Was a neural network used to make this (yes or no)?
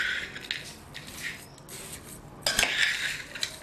no